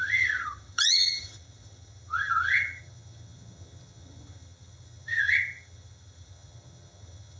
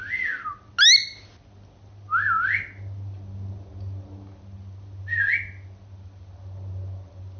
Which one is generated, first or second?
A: first